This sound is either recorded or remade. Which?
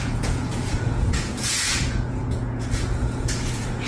remade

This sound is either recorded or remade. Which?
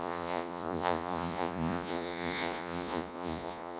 remade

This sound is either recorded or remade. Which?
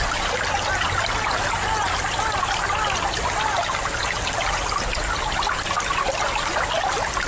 recorded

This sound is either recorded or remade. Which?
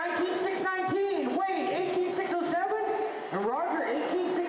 recorded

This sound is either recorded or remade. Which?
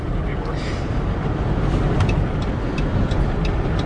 recorded